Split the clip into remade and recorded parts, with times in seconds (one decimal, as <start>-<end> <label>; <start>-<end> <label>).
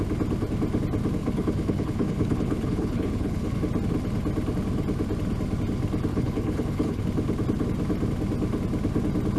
0.0-1.2 recorded; 1.2-3.6 remade; 3.6-6.1 recorded; 6.1-7.0 remade; 7.0-9.4 recorded